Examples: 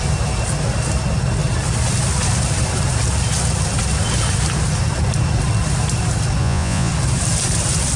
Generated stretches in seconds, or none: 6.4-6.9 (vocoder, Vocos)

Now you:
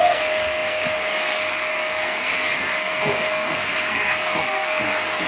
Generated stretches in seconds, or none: 0.0-5.3 (codec, SNAC)

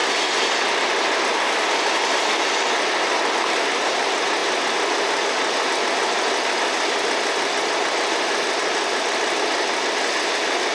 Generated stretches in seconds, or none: none

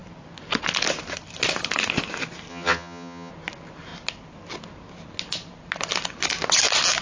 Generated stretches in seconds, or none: 2.5-3.3 (vocoder, HiFi-GAN)

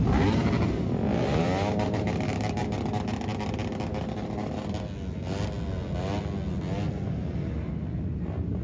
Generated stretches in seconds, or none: none